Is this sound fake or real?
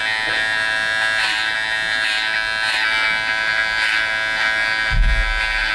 real